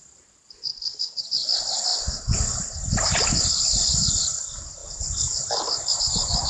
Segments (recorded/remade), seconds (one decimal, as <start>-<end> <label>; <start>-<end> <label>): 0.0-0.7 recorded; 0.7-1.2 remade; 1.2-6.5 recorded